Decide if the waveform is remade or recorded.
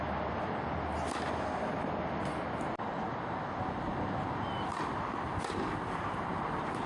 recorded